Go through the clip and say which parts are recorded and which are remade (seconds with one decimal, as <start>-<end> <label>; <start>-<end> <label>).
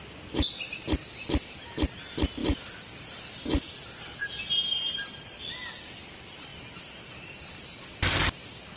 0.0-2.4 recorded; 2.4-4.3 remade; 4.3-4.7 recorded; 4.7-5.5 remade; 5.5-6.5 recorded; 6.5-7.8 remade; 7.8-8.8 recorded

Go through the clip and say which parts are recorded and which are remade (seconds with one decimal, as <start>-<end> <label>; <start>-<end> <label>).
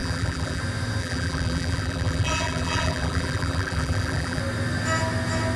0.0-0.6 remade; 0.6-1.0 recorded; 1.0-4.4 remade; 4.4-5.6 recorded